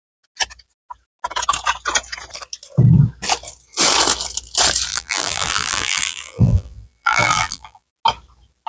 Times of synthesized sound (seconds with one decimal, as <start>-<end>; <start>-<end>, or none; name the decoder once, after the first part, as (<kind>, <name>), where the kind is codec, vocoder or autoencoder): 4.9-7.9 (vocoder, BigVGAN v2)